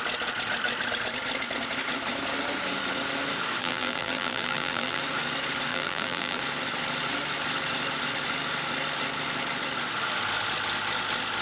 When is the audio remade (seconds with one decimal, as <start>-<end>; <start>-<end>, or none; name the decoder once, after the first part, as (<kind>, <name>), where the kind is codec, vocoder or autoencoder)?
3.6-5.0 (vocoder, BigVGAN v2); 5.7-6.4